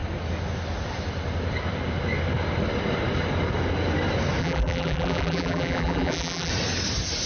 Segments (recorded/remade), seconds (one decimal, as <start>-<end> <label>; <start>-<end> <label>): 0.0-4.4 recorded; 4.4-6.5 remade; 6.5-7.3 recorded